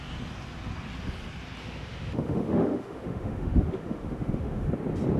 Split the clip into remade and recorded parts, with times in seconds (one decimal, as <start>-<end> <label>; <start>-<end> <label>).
0.0-1.6 recorded; 1.6-4.7 remade; 4.7-5.2 recorded